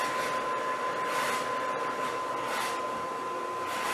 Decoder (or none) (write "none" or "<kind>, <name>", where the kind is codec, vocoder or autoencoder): none